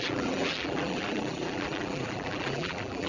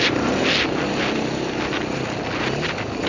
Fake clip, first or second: first